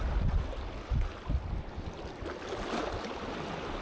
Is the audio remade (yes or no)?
no